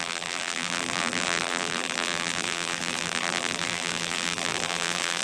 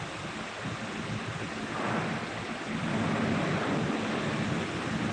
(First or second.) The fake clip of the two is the first